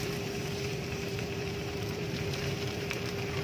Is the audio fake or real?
fake